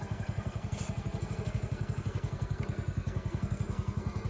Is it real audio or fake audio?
fake